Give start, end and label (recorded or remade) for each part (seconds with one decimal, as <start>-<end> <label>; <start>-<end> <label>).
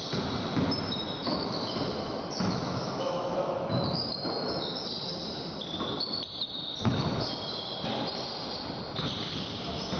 0.0-1.2 recorded; 1.2-4.8 remade; 4.8-10.0 recorded